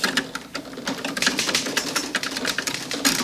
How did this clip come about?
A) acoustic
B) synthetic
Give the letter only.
B